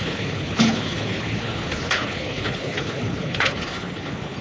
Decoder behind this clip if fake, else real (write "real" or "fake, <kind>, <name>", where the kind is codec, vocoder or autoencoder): fake, codec, HILCodec